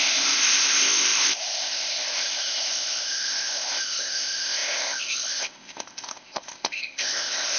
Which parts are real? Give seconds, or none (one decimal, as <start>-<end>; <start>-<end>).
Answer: none